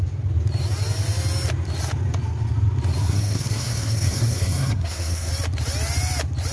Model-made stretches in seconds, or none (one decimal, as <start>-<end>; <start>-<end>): 3.0-5.3